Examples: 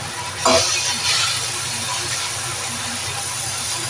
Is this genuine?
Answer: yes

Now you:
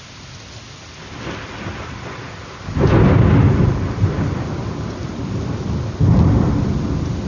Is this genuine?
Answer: yes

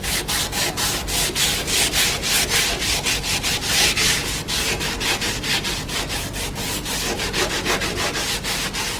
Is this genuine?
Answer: yes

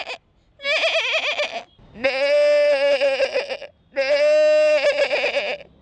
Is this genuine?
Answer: yes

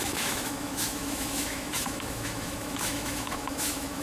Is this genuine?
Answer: no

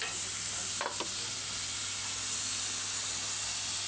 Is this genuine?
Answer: yes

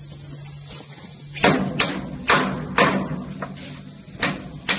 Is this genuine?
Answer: yes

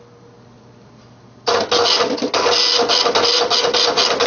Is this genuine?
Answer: yes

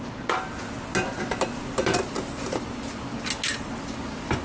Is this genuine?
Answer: yes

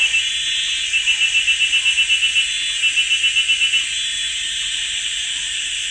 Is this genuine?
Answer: yes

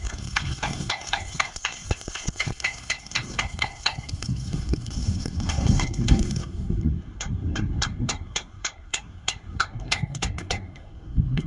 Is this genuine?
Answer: no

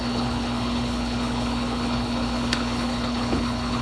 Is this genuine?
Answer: no